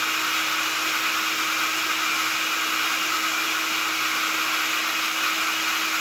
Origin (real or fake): real